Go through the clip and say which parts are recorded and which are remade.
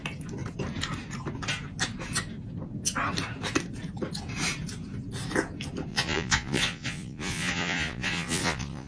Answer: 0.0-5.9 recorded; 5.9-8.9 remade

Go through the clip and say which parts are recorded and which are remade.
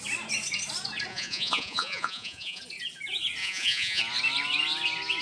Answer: 0.0-1.1 recorded; 1.1-2.6 remade; 2.6-3.4 recorded; 3.4-4.0 remade; 4.0-5.2 recorded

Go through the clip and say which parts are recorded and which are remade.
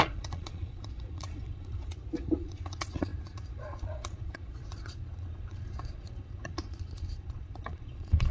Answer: 0.0-1.9 remade; 1.9-2.4 recorded; 2.4-8.3 remade